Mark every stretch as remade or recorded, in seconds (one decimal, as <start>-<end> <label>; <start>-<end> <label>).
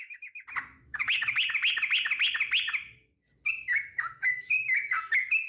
0.0-0.9 recorded; 0.9-1.5 remade; 1.5-3.9 recorded; 3.9-4.8 remade; 4.8-5.5 recorded